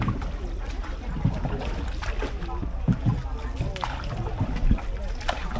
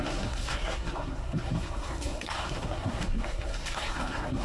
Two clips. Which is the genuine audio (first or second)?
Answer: first